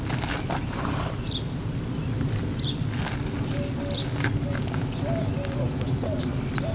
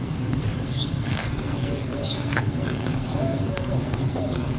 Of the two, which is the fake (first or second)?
second